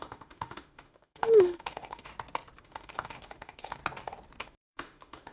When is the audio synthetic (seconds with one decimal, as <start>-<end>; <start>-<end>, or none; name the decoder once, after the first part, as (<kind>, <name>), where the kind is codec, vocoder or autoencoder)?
0.0-2.1 (autoencoder, DAC-VAE); 2.6-3.8; 4.4-5.3